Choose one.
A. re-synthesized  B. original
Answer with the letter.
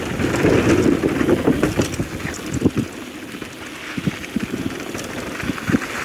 B